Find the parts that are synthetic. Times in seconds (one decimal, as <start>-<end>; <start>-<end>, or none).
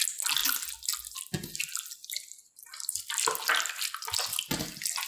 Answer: none